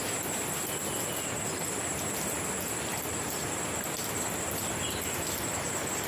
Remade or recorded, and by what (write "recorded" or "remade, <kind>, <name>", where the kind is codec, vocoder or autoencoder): recorded